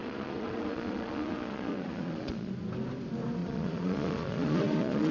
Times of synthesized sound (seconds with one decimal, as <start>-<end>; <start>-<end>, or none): 0.0-2.5; 3.4-5.1